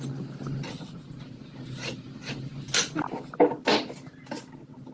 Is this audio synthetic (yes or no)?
no